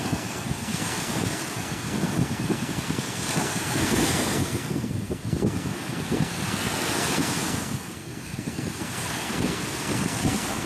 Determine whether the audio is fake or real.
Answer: fake